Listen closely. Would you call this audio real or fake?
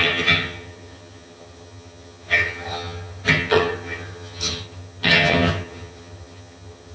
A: fake